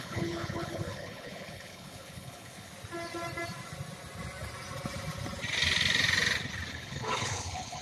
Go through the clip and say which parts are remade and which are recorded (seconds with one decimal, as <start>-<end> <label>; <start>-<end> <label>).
0.0-2.7 remade; 2.7-6.7 recorded; 6.7-7.8 remade